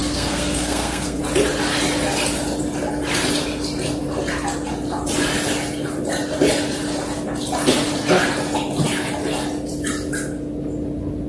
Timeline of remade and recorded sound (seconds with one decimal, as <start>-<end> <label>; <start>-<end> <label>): 0.0-1.2 remade; 1.2-11.3 recorded